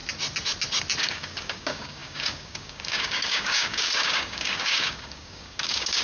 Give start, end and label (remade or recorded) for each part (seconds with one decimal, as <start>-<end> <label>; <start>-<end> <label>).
0.0-1.0 recorded; 1.0-6.0 remade